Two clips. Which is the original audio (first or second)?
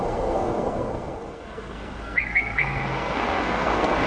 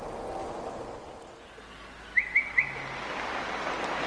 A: second